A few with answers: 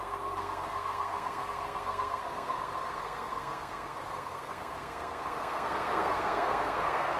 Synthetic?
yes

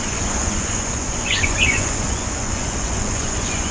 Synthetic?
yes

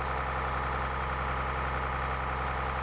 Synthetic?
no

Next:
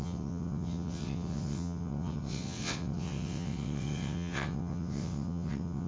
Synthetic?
yes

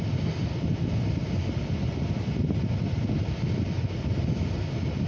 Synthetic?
no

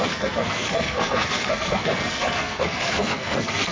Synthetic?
yes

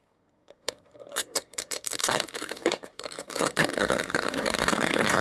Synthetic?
yes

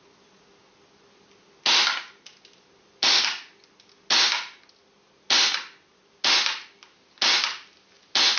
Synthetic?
no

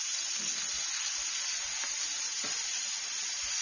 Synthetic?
no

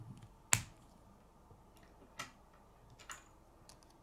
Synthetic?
no